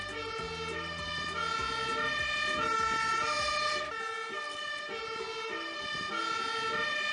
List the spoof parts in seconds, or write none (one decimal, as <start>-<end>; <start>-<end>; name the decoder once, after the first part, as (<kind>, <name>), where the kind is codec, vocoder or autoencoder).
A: none